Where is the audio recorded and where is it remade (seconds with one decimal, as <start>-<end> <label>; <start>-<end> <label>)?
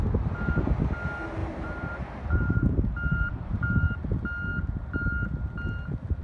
0.0-1.4 recorded; 1.4-4.1 remade; 4.1-6.2 recorded